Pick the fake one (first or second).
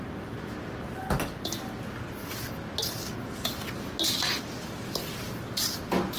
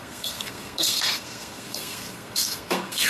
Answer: second